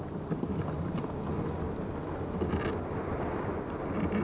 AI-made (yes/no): no